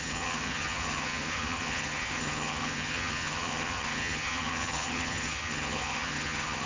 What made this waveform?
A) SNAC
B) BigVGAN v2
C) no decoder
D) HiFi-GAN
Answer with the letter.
D